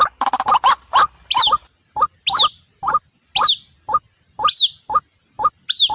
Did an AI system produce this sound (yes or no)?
no